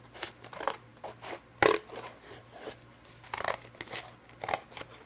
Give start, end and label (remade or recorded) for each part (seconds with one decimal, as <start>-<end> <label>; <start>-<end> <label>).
0.0-5.1 recorded